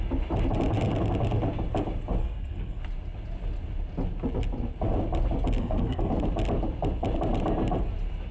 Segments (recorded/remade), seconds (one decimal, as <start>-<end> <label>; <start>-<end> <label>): 0.0-2.2 recorded; 2.2-2.8 remade; 2.8-5.6 recorded; 5.6-6.1 remade; 6.1-8.3 recorded

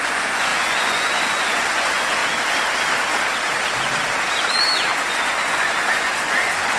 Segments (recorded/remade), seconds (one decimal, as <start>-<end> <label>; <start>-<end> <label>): 0.0-2.2 remade; 2.2-5.1 recorded; 5.1-6.8 remade